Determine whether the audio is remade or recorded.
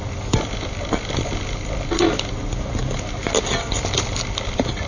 recorded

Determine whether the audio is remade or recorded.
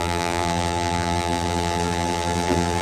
remade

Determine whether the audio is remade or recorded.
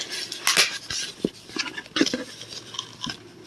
recorded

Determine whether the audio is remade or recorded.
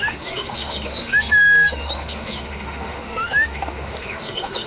remade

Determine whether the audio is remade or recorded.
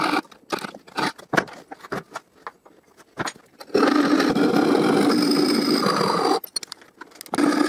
recorded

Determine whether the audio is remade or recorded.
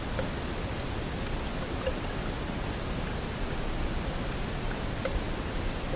recorded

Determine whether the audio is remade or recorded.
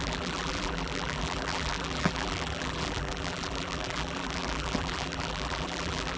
remade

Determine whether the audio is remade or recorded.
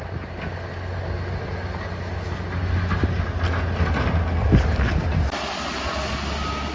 recorded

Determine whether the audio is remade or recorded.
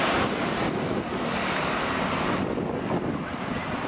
recorded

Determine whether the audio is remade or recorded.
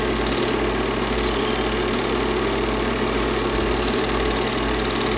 recorded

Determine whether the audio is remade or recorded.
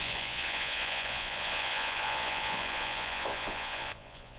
remade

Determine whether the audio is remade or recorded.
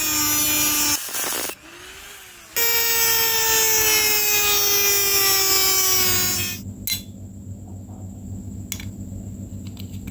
recorded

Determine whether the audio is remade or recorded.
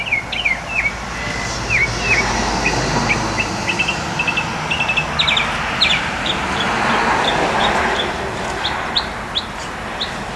recorded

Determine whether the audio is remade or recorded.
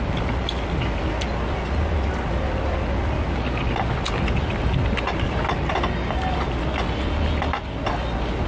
recorded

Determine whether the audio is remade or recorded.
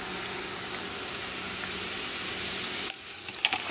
recorded